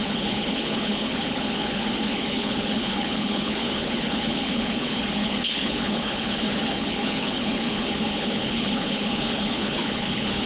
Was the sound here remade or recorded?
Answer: remade